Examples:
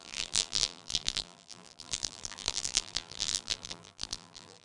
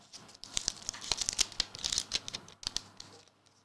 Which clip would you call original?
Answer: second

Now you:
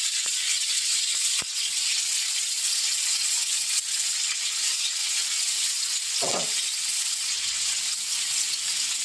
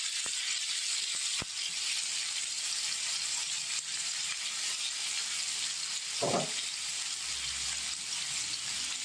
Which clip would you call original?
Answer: second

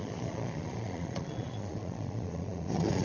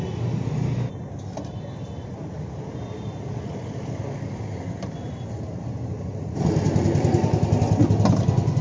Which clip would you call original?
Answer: second